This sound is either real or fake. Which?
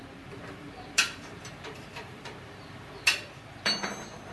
fake